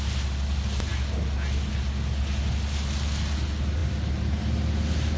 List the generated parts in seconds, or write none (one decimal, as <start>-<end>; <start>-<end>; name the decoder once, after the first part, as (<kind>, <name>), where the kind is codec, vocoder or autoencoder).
none